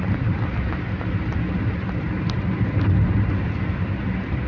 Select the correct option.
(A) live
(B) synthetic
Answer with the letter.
A